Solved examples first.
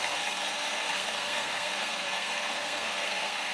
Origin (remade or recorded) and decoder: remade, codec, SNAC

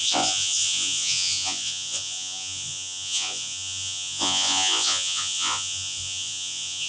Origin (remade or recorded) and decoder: remade, vocoder, Vocos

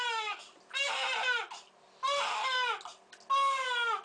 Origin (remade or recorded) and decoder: recorded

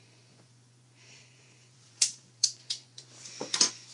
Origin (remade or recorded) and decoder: remade, vocoder, Vocos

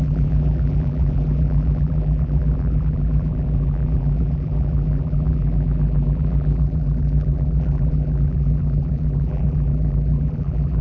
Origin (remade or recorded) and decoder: remade, vocoder, BigVGAN v2